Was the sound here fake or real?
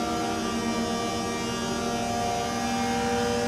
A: real